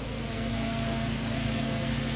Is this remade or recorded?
remade